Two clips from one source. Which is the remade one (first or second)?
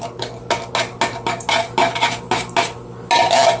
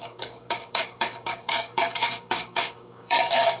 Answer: second